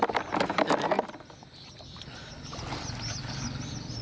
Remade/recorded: recorded